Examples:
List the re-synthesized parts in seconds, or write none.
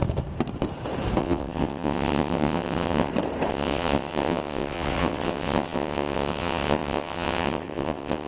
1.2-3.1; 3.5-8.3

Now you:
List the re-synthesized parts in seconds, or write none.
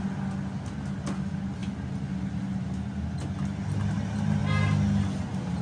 none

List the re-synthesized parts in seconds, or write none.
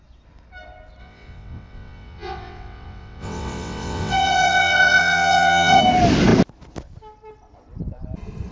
1.0-5.8